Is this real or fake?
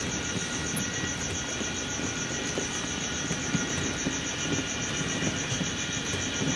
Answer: real